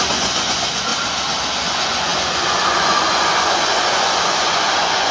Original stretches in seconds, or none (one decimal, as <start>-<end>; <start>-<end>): 0.9-1.5